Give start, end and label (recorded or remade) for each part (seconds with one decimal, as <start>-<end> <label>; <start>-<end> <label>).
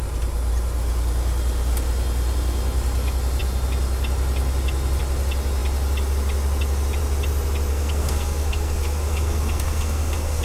0.0-7.7 recorded; 7.7-10.4 remade